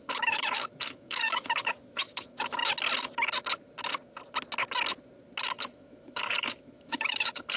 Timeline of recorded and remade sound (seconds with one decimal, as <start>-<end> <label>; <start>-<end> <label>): 0.0-2.6 remade; 2.6-5.6 recorded; 5.6-7.6 remade